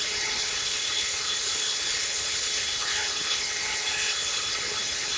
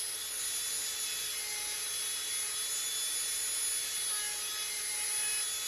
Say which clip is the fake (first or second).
first